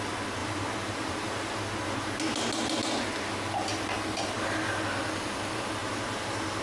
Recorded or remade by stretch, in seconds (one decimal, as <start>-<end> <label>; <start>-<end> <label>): 0.0-0.4 recorded; 0.4-1.6 remade; 1.6-5.8 recorded; 5.8-6.6 remade